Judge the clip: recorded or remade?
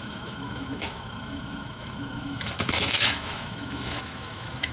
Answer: remade